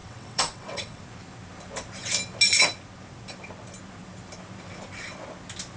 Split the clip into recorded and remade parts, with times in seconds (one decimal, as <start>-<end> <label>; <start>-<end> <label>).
0.0-1.0 remade; 1.0-5.8 recorded